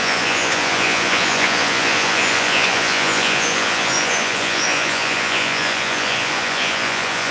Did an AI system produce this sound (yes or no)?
yes